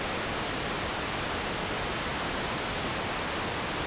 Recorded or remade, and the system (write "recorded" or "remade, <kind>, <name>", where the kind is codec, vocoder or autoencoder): recorded